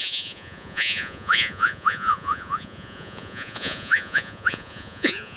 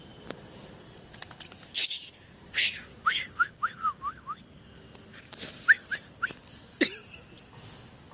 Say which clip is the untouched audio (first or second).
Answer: second